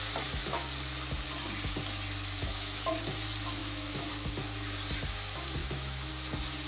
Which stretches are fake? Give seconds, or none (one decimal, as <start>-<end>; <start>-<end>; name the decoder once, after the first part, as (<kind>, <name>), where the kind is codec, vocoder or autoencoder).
2.4-2.9 (autoencoder, DAC-VAE); 3.6-4.1; 5.6-6.1